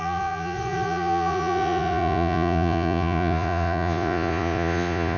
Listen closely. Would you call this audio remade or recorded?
remade